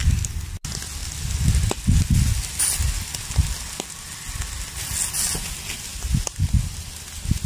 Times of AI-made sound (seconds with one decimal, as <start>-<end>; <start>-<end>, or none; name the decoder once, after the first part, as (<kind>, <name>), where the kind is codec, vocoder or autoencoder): none